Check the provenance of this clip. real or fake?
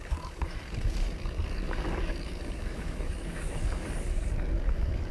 fake